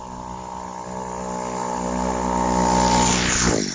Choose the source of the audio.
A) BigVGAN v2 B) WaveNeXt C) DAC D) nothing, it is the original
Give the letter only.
D